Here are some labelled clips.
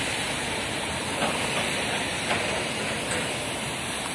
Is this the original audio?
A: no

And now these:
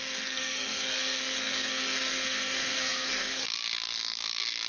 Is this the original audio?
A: no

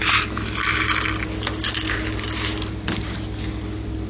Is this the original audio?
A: yes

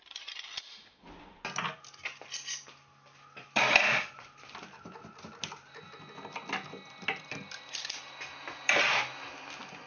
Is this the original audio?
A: yes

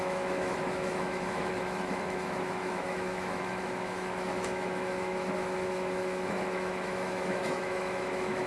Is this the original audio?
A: no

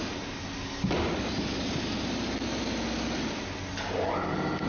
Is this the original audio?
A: yes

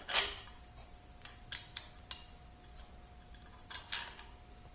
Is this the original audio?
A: yes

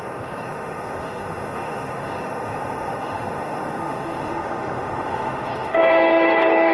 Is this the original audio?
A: no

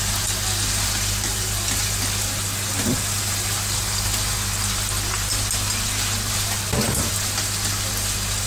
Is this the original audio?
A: yes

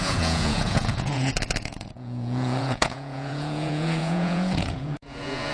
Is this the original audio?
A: no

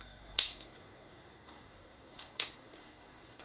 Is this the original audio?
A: no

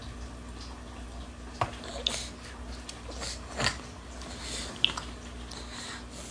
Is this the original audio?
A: yes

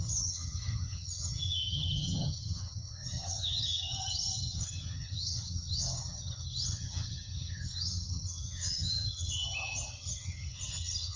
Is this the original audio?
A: no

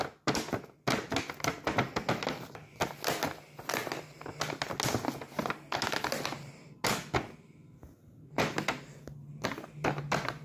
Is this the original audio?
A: yes